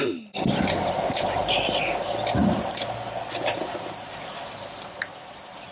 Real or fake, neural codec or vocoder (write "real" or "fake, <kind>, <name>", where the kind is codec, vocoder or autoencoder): real